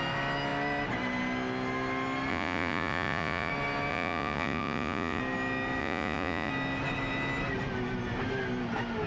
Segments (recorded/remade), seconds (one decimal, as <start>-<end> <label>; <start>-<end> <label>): 0.0-2.3 recorded; 2.3-3.5 remade; 3.5-3.9 recorded; 3.9-5.2 remade; 5.2-5.8 recorded; 5.8-6.5 remade; 6.5-9.1 recorded